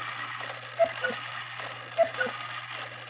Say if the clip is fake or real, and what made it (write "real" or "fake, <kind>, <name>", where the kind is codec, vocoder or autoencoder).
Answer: real